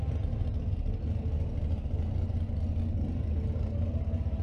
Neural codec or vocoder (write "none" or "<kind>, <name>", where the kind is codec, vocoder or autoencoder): none